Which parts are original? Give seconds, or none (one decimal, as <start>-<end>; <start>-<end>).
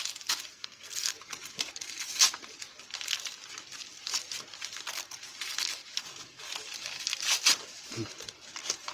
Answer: 0.0-0.5; 1.1-8.9